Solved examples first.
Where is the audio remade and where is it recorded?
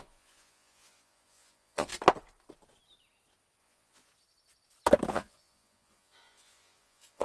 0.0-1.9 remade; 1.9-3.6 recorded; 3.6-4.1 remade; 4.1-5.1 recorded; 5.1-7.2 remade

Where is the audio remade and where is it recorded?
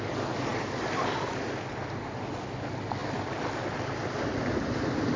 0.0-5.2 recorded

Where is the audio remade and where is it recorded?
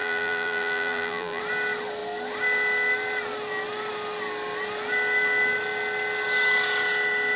0.0-1.4 remade; 1.4-7.4 recorded